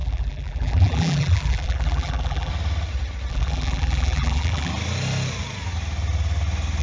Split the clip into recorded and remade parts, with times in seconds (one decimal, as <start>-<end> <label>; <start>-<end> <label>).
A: 0.0-2.5 remade; 2.5-3.3 recorded; 3.3-4.7 remade; 4.7-6.8 recorded